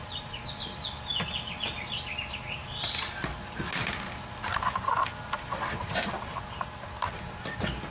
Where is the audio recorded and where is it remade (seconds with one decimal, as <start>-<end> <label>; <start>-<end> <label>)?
0.0-7.9 recorded